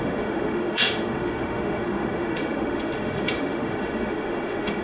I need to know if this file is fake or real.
fake